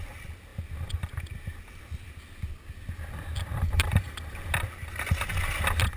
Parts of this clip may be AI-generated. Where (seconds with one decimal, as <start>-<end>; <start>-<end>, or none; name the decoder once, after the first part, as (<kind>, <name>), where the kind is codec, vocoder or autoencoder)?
3.5-4.4 (vocoder, BigVGAN v2)